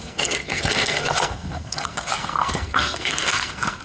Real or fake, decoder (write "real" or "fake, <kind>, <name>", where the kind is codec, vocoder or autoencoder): fake, codec, SNAC